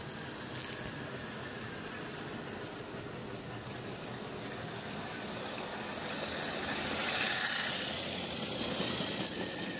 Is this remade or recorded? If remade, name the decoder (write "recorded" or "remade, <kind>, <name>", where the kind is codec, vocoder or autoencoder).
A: recorded